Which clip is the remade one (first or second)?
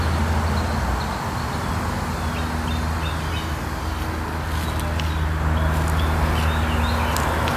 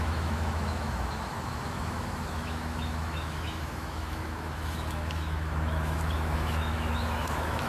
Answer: second